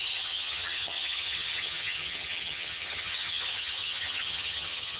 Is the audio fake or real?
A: fake